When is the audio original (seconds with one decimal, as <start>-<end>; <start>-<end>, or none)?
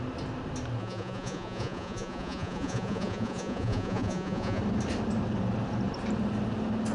0.0-0.8; 4.6-6.9